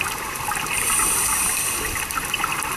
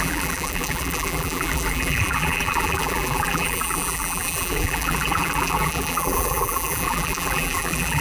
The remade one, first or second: second